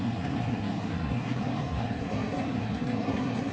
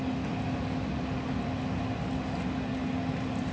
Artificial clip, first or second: first